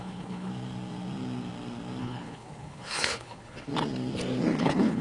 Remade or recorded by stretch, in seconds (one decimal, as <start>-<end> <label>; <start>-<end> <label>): 0.0-0.5 remade; 0.5-2.0 recorded; 2.0-3.7 remade; 3.7-4.6 recorded; 4.6-5.0 remade